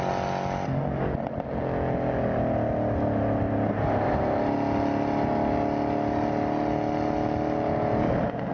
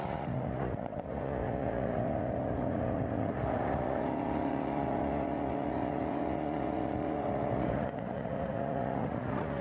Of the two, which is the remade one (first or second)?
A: second